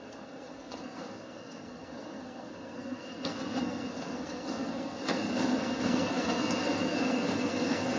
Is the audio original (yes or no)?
no